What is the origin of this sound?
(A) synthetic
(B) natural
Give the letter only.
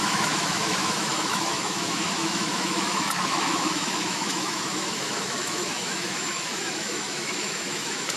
A